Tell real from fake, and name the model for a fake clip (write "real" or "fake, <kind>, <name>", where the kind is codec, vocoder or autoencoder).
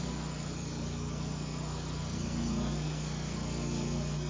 fake, codec, SNAC